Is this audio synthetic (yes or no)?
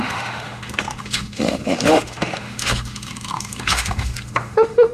yes